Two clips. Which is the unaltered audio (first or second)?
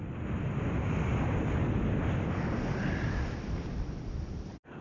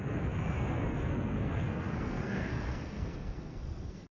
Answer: first